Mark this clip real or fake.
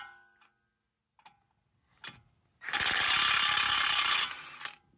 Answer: real